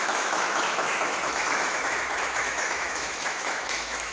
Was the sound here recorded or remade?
remade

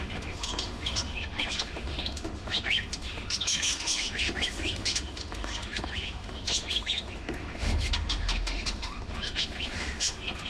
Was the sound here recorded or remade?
remade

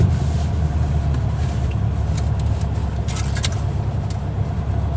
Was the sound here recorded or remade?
recorded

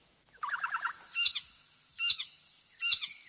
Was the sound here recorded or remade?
remade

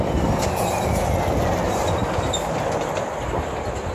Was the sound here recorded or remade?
recorded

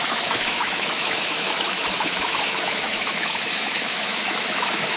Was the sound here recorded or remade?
remade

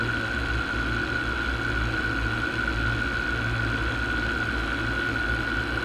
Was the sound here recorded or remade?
recorded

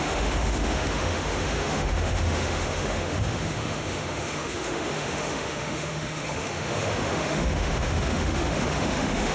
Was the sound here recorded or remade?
remade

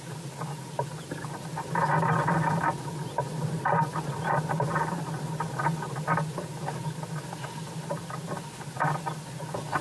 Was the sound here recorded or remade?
recorded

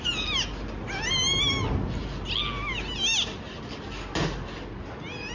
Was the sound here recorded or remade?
recorded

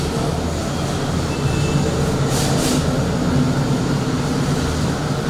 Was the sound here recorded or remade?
recorded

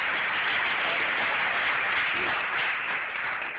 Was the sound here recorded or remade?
recorded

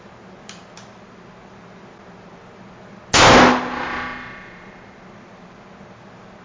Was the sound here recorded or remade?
recorded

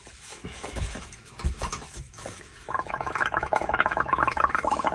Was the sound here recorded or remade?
remade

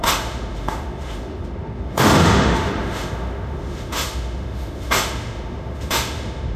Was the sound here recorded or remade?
remade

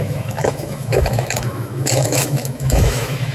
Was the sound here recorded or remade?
remade